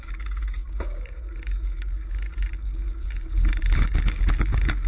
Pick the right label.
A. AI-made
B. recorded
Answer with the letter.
A